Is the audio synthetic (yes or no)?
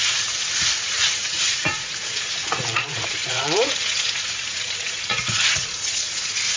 yes